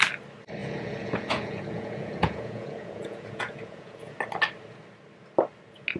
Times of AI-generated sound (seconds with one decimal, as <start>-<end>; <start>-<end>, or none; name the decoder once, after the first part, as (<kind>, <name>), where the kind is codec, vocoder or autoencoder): 0.6-4.2 (vocoder, Vocos)